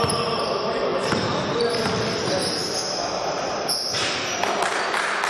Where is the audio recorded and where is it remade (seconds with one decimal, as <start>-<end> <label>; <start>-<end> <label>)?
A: 0.0-5.3 recorded